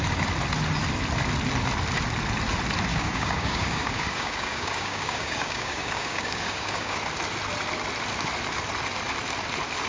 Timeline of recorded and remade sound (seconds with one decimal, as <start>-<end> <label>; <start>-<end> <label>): 0.0-2.9 recorded; 2.9-7.0 remade; 7.0-9.9 recorded